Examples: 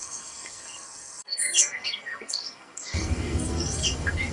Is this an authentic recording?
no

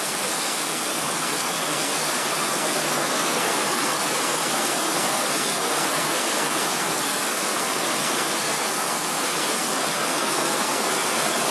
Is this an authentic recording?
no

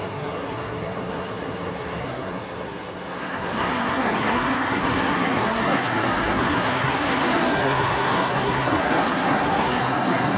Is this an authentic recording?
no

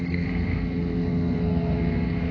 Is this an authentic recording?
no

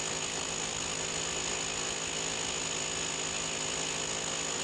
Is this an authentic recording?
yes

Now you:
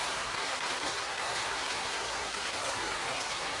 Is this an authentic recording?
no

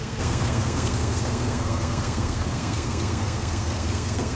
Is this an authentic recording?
no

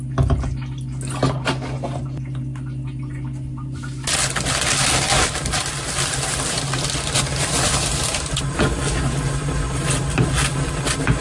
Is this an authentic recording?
yes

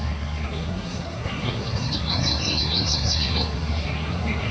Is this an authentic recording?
no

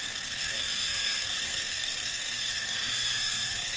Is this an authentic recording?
no